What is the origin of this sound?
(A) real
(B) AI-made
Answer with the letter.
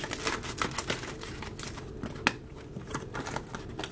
A